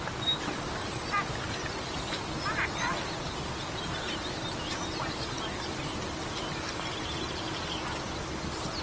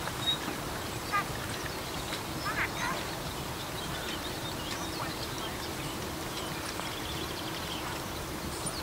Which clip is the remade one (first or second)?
second